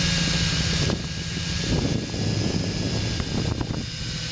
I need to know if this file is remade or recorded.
recorded